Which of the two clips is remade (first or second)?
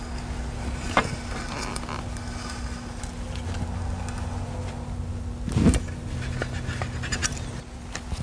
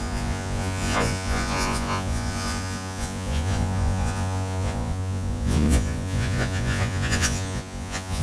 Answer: second